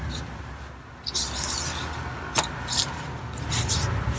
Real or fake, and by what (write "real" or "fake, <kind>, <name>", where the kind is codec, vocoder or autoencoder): real